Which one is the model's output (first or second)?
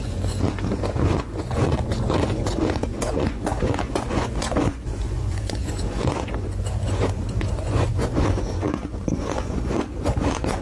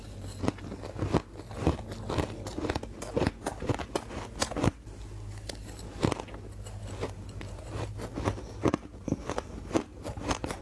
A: first